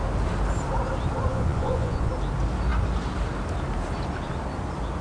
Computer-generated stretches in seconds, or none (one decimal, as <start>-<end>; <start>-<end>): 1.3-2.1